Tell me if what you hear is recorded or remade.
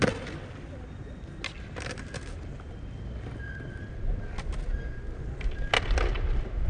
recorded